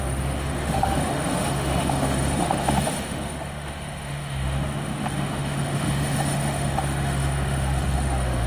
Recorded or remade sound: remade